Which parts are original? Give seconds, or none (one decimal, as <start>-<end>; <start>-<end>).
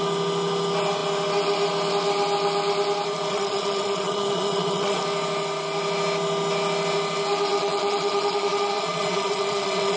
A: 0.0-3.3; 5.0-7.5